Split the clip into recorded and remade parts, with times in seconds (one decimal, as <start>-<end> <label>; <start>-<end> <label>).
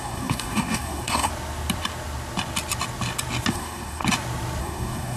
0.0-1.3 remade; 1.3-3.5 recorded; 3.5-4.0 remade; 4.0-4.6 recorded; 4.6-5.2 remade